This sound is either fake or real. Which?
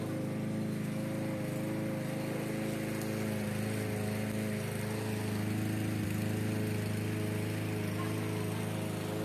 real